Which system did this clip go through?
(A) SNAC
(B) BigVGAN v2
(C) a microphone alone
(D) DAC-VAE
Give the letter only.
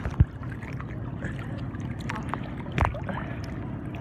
C